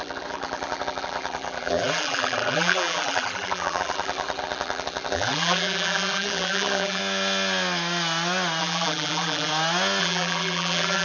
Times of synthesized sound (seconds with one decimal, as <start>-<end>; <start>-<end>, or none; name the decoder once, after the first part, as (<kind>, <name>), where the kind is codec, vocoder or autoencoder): 0.0-7.0 (vocoder, BigVGAN v2); 8.6-9.5; 10.0-11.0